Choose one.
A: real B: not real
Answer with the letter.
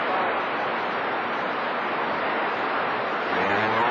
A